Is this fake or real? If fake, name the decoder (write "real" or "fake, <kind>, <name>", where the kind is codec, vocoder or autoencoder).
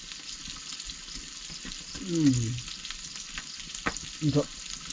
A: real